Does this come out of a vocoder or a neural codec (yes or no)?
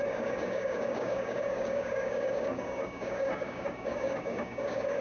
yes